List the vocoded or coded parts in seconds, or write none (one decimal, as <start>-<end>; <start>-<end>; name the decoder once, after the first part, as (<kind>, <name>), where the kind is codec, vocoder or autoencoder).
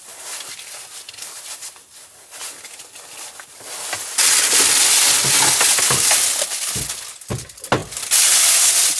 none